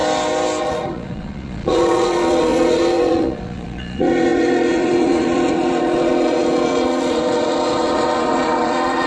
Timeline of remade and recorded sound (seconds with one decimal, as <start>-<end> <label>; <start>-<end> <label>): 0.0-0.6 recorded; 0.6-9.1 remade